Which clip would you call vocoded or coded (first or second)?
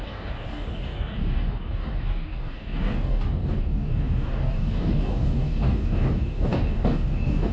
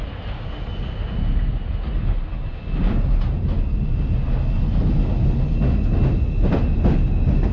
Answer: first